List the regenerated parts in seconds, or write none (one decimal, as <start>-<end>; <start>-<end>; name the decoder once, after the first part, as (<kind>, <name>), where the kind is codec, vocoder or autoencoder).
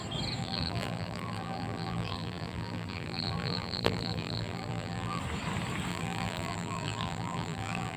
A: 0.4-5.2 (vocoder, BigVGAN v2); 5.9-8.0